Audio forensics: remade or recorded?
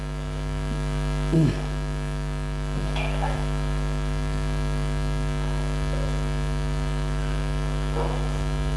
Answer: remade